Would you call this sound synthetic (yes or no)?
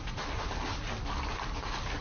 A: no